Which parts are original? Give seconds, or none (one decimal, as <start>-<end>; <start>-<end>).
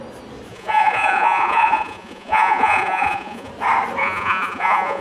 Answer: 0.0-0.5; 3.5-4.0